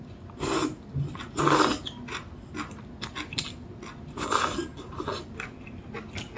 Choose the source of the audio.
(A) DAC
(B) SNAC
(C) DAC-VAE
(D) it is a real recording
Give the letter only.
D